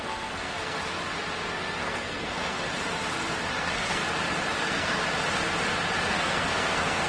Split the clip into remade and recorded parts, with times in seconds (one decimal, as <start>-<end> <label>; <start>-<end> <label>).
0.0-0.8 remade; 0.8-1.8 recorded; 1.8-2.6 remade; 2.6-3.6 recorded; 3.6-4.0 remade; 4.0-4.6 recorded; 4.6-5.0 remade; 5.0-6.1 recorded; 6.1-7.1 remade